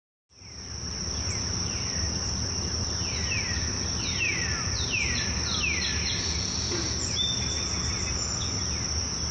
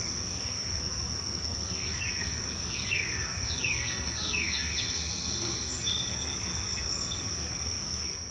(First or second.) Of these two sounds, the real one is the first